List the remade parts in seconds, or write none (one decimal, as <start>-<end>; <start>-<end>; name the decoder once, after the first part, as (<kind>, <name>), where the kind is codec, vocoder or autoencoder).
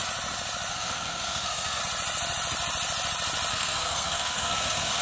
0.7-1.8 (codec, SNAC); 3.5-5.0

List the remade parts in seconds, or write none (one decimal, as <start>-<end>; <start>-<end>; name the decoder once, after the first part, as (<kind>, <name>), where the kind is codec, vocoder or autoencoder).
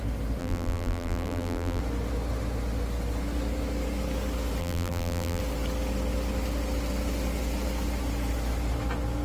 0.4-1.8 (vocoder, BigVGAN v2); 4.6-5.4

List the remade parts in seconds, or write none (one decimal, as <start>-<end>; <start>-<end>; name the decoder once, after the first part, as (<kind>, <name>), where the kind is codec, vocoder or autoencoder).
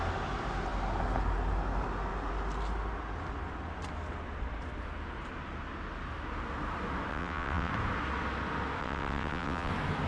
7.1-7.7 (vocoder, WaveNeXt); 8.8-9.7